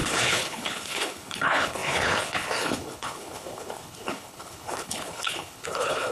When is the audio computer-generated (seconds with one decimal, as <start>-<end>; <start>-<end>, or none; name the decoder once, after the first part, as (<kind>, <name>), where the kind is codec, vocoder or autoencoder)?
0.0-6.1 (codec, HILCodec)